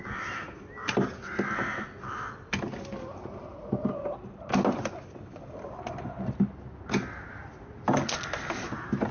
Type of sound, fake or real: real